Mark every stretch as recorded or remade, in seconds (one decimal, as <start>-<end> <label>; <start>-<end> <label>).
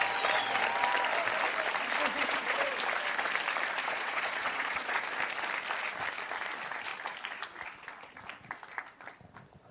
0.0-2.2 recorded; 2.2-2.7 remade; 2.7-3.8 recorded; 3.8-5.0 remade; 5.0-9.7 recorded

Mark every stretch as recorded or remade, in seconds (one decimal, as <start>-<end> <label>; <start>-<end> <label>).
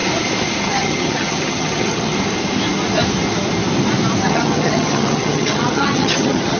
0.0-0.6 recorded; 0.6-2.1 remade; 2.1-4.2 recorded; 4.2-6.6 remade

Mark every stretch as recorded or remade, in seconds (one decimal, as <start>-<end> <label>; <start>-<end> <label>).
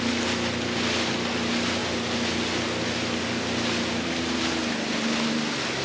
0.0-5.8 recorded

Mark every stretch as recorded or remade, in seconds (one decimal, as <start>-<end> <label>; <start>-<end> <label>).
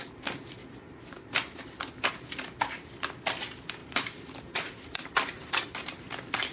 0.0-0.6 recorded; 0.6-2.1 remade; 2.1-3.8 recorded; 3.8-6.1 remade; 6.1-6.5 recorded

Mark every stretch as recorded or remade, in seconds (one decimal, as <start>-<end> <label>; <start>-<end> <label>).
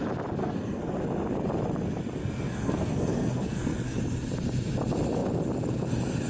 0.0-0.4 recorded; 0.4-1.0 remade; 1.0-2.2 recorded; 2.2-4.0 remade; 4.0-6.3 recorded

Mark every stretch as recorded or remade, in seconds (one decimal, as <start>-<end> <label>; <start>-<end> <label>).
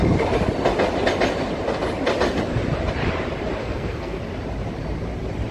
0.0-3.6 recorded; 3.6-4.2 remade; 4.2-5.5 recorded